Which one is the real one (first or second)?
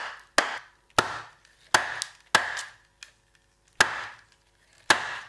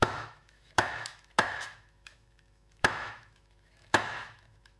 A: first